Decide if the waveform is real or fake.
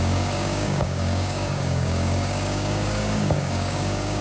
fake